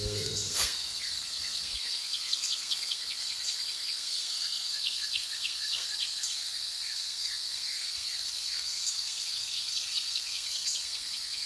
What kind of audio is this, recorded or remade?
remade